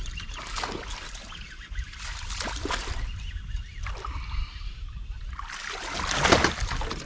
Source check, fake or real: real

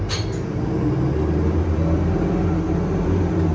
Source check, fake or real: real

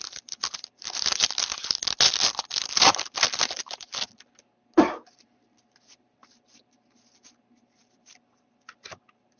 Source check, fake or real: real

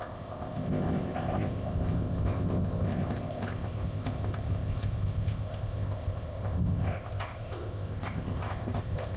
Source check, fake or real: fake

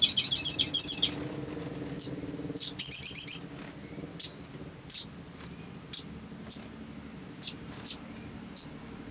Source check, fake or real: real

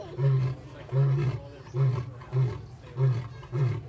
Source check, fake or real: real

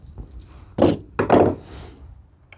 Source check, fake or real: real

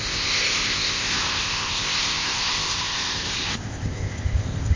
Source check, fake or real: fake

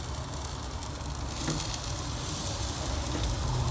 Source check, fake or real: real